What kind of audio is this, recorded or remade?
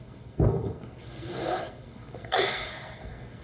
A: remade